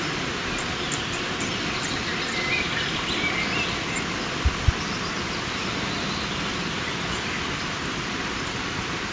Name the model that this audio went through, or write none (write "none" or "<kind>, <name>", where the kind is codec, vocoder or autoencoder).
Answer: none